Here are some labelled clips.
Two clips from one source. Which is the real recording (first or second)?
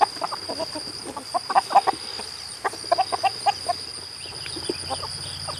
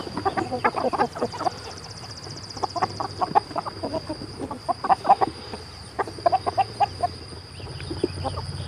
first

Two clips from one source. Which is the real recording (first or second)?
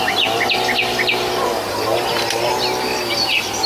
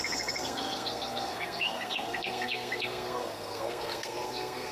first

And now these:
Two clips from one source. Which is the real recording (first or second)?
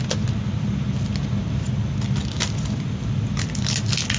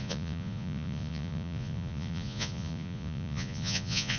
first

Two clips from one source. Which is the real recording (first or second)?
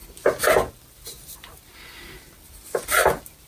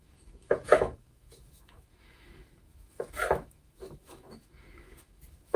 first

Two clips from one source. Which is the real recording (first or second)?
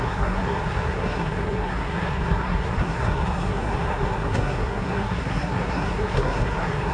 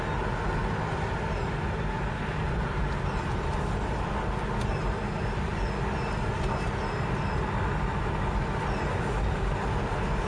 second